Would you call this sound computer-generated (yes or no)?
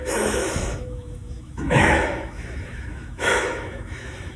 yes